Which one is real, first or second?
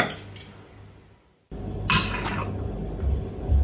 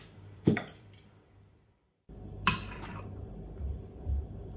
first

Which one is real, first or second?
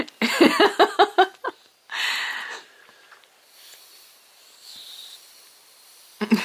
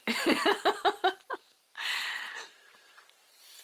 first